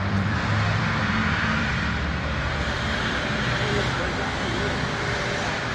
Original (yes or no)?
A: no